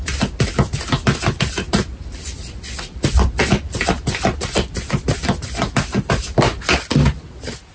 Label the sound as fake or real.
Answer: real